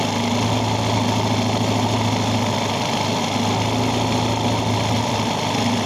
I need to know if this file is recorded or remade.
recorded